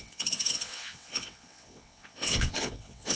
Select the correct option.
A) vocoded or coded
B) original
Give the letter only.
A